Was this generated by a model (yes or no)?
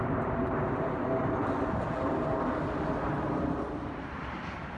no